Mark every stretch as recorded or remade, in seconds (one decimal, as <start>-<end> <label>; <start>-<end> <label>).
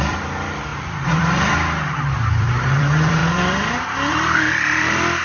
0.0-3.2 remade; 3.2-4.1 recorded; 4.1-5.2 remade